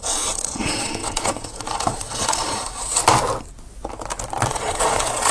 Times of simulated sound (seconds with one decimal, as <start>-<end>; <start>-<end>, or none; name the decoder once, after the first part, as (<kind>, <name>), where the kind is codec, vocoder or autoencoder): 0.0-3.0 (vocoder, Vocos); 4.5-5.3